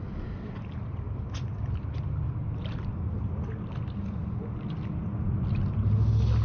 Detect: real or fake real